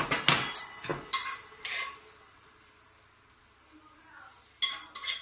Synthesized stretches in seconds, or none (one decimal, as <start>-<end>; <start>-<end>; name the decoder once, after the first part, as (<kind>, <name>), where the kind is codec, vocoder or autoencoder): none